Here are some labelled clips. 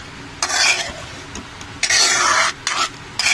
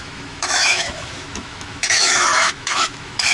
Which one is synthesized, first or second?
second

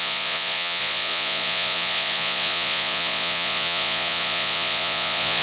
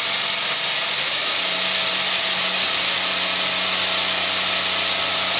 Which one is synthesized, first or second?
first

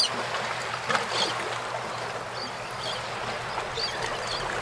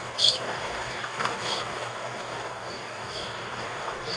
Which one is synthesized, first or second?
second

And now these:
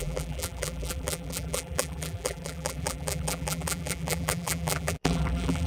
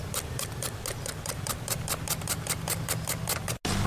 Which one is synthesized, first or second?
first